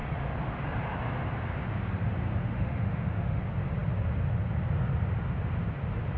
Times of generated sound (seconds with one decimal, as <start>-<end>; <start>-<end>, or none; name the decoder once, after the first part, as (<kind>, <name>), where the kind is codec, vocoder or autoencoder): 2.4-3.4 (autoencoder, DAC-VAE)